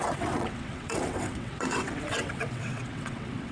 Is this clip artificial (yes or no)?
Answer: yes